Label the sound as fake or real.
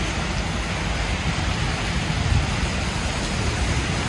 real